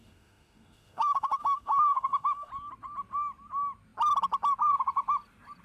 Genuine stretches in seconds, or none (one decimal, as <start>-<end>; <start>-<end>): 2.5-5.6